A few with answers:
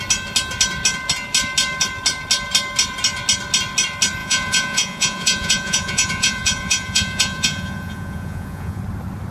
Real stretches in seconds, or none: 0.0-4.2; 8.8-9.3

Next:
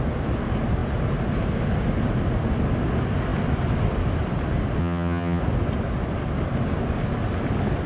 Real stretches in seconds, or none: 0.0-4.8; 5.4-7.9

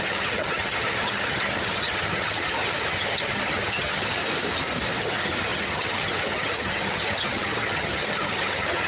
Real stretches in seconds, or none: 4.2-5.0

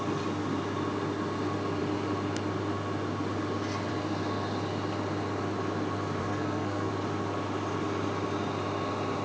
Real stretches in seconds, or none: 0.0-6.2; 6.9-9.2

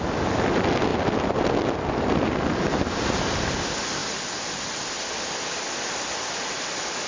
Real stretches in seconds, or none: 0.0-7.1

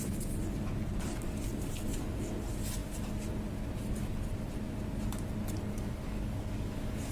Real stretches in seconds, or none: 0.0-5.7

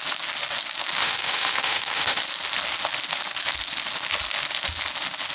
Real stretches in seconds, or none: 0.0-1.0; 2.2-5.3